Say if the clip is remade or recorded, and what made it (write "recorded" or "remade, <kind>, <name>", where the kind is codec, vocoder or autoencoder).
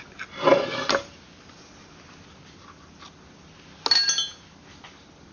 recorded